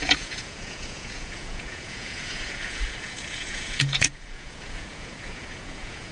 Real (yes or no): no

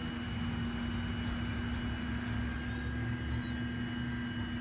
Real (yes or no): yes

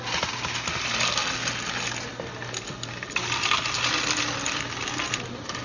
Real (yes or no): yes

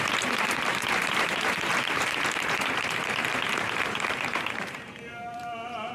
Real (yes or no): no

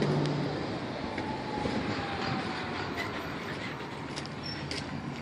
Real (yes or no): yes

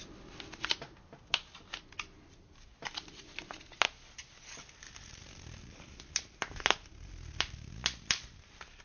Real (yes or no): yes